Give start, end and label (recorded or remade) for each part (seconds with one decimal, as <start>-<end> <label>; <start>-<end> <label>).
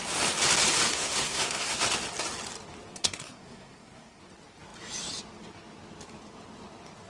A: 0.0-0.9 recorded; 0.9-1.8 remade; 1.8-2.9 recorded; 2.9-4.2 remade; 4.2-7.1 recorded